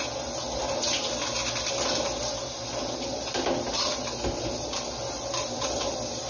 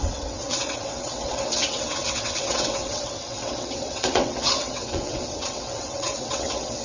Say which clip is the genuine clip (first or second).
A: first